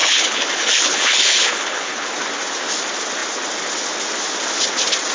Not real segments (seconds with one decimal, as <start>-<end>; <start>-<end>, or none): 0.0-2.1